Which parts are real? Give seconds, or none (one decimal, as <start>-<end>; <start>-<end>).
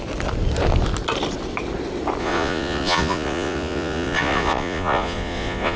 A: 0.0-2.2